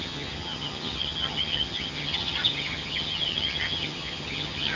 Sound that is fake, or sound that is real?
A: fake